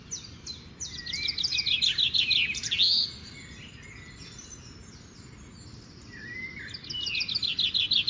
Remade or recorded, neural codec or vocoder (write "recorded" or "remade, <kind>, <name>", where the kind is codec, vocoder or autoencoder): recorded